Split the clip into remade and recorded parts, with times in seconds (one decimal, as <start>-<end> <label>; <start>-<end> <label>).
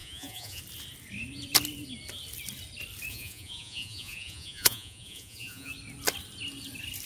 0.0-0.6 remade; 0.6-3.1 recorded; 3.1-5.7 remade; 5.7-7.1 recorded